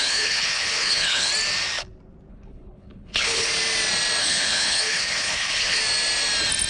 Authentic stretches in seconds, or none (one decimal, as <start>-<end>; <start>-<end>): 1.3-2.3; 3.5-4.2; 5.8-6.7